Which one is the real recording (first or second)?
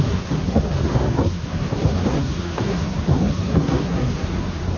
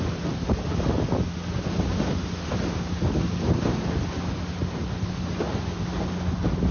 second